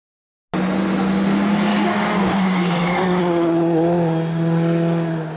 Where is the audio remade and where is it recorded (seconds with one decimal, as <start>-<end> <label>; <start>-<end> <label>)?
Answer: 0.0-1.7 recorded; 1.7-3.2 remade; 3.2-5.4 recorded